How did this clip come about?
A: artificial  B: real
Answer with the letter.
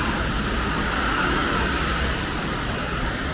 A